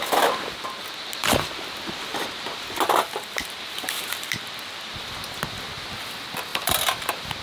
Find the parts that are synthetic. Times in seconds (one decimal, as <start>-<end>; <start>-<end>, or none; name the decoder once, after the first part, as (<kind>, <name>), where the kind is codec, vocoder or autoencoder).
1.2-5.2 (vocoder, BigVGAN v2); 6.5-7.4